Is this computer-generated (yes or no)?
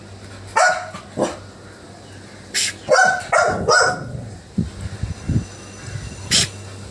no